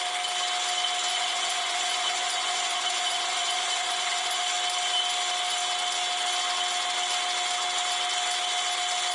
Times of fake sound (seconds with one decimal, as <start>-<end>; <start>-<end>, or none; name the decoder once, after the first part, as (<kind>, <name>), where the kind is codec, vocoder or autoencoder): 1.1-4.4 (vocoder, Vocos)